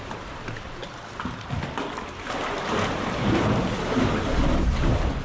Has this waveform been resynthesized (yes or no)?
no